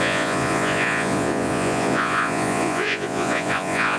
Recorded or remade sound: remade